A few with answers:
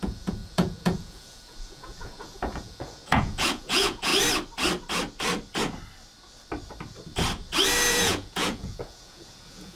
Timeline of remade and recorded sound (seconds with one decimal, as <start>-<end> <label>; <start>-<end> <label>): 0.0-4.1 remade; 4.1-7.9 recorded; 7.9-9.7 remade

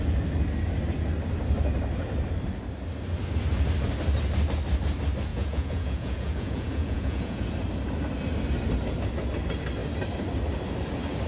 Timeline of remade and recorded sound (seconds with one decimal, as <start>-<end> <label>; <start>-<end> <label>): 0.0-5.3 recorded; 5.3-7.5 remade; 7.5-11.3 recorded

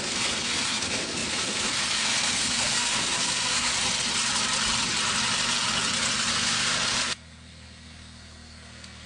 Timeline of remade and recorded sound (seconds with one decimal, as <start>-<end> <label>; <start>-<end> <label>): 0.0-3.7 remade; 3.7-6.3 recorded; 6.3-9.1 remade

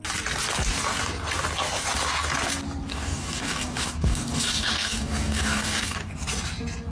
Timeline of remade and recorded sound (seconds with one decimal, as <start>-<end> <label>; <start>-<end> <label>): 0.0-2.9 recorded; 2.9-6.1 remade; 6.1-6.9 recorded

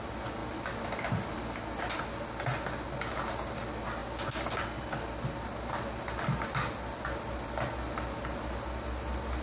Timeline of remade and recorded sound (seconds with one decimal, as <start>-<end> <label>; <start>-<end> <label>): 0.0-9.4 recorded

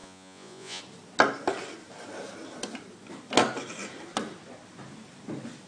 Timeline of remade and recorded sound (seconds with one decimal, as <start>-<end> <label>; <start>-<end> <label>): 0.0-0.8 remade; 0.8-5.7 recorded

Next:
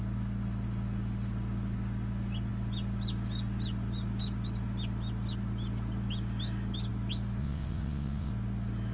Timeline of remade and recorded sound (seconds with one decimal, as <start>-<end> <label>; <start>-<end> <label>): 0.0-7.4 recorded; 7.4-8.3 remade; 8.3-8.9 recorded